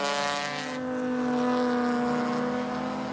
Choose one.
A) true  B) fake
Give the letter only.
A